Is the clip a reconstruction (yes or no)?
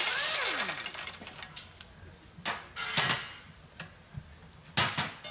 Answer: no